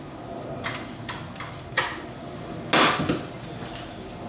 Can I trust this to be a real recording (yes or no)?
yes